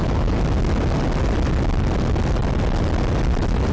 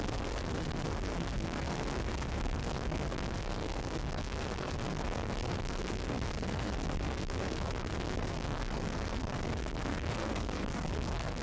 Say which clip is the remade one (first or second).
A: second